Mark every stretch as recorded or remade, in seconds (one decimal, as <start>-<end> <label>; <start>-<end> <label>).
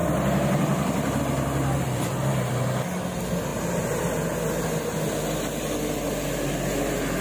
0.0-7.2 recorded